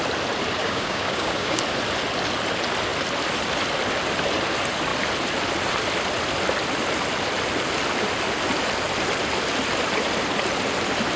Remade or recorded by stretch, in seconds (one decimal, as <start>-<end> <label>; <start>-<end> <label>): 0.0-0.6 recorded; 0.6-1.6 remade; 1.6-11.2 recorded